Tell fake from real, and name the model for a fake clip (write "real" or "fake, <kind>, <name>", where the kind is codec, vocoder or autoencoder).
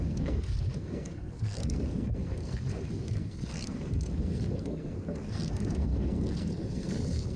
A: fake, codec, SNAC